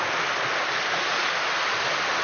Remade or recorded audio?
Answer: recorded